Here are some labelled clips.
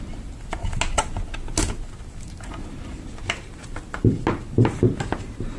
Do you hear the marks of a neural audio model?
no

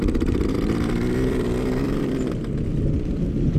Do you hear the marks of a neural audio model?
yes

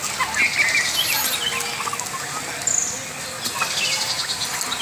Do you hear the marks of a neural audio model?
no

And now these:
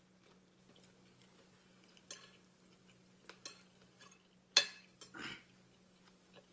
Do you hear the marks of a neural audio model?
no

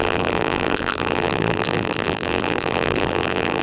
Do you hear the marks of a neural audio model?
yes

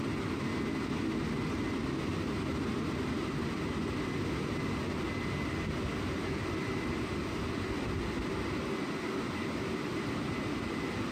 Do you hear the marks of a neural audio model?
no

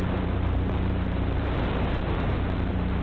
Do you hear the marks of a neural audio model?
yes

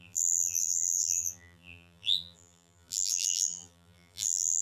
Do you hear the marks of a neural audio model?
yes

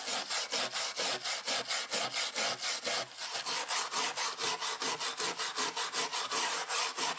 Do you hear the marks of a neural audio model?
no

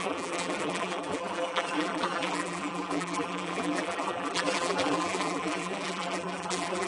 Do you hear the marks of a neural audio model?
yes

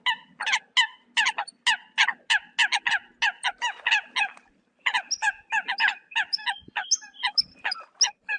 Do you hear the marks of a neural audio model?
no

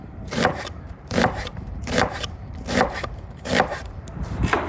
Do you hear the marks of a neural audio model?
yes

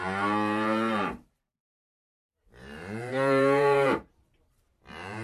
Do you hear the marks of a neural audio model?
yes